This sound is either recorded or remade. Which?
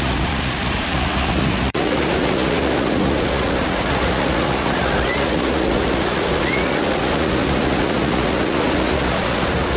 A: remade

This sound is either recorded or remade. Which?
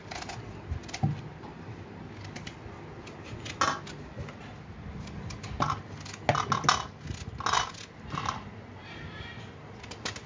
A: recorded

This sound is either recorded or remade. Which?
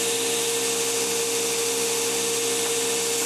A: recorded